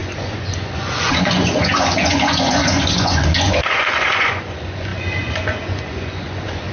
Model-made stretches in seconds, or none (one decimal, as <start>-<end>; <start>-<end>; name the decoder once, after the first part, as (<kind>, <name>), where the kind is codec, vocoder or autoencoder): 0.0-6.7 (vocoder, Vocos)